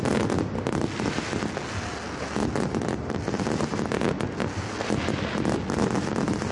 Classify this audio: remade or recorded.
recorded